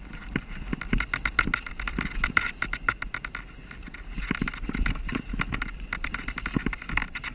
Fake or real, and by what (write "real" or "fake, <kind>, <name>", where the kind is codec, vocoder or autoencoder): real